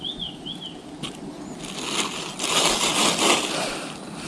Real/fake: real